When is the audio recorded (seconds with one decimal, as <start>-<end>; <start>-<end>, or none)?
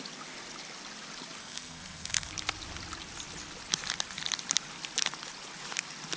0.0-1.4; 2.3-6.2